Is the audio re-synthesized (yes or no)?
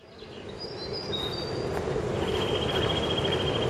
no